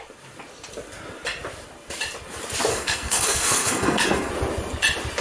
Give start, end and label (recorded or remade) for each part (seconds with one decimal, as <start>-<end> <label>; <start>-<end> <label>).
0.0-2.7 recorded; 2.7-4.3 remade; 4.3-5.2 recorded